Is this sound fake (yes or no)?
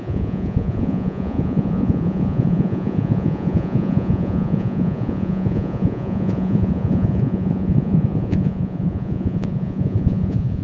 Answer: yes